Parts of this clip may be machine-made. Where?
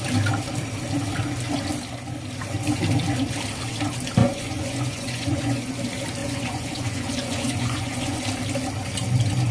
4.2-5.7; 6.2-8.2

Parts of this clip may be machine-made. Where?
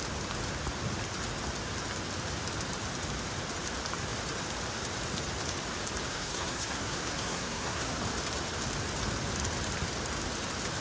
6.1-8.0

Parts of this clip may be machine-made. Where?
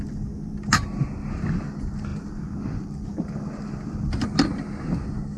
none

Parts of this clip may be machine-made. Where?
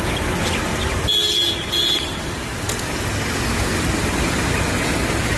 none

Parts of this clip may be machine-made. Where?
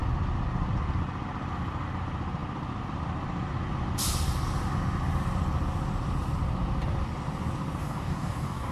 7.8-8.7